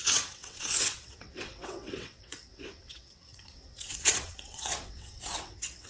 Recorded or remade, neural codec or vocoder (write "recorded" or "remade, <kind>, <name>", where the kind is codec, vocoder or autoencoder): remade, vocoder, WaveNeXt